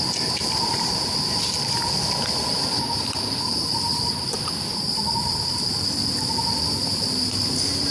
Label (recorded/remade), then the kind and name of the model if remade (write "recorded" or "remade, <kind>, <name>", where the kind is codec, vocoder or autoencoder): recorded